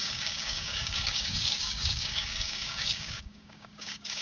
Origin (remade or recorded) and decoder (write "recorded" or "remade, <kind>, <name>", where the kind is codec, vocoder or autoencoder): remade, codec, DAC